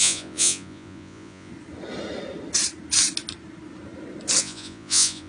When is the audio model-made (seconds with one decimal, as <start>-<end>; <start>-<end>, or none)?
0.0-1.5; 4.4-5.3